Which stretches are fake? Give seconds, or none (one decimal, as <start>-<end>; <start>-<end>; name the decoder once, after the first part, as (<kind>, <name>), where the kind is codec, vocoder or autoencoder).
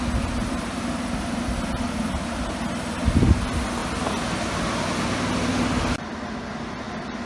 none